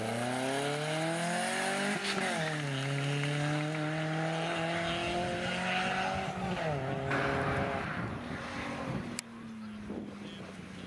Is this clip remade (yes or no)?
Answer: no